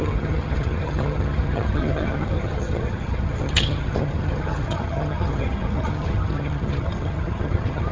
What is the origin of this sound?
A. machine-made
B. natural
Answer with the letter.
A